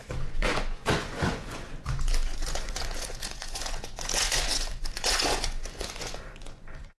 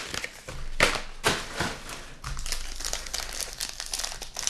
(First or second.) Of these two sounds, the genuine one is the second